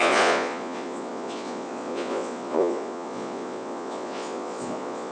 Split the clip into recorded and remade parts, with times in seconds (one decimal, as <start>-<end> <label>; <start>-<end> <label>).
0.0-5.1 remade

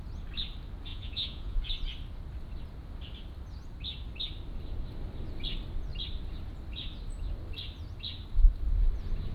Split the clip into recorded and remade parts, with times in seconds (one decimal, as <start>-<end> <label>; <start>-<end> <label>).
0.0-0.9 recorded; 0.9-1.7 remade; 1.7-9.3 recorded

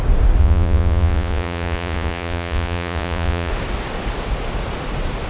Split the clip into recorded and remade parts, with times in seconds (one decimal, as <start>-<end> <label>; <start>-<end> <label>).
0.0-0.4 recorded; 0.4-3.5 remade; 3.5-5.3 recorded

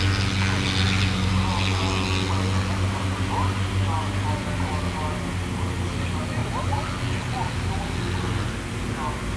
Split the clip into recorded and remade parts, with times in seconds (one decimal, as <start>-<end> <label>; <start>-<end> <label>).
0.0-9.4 recorded

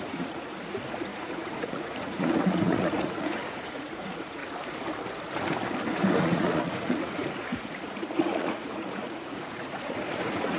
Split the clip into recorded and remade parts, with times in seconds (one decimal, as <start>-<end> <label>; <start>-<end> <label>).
0.0-4.4 remade; 4.4-6.2 recorded; 6.2-10.6 remade